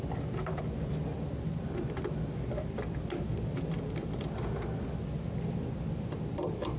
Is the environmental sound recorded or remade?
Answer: recorded